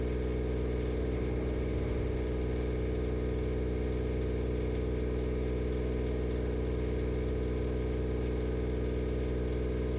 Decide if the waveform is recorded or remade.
recorded